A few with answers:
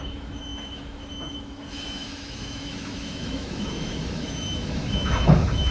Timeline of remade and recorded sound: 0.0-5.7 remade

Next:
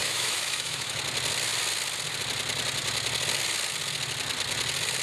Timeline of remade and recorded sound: 0.0-1.0 remade; 1.0-5.0 recorded

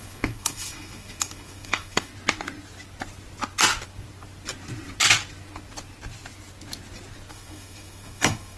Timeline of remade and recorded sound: 0.0-2.1 remade; 2.1-7.3 recorded; 7.3-8.6 remade

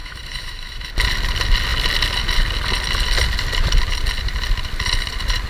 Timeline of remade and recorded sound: 0.0-0.9 remade; 0.9-5.5 recorded